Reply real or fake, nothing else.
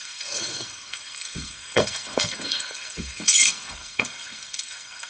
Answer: fake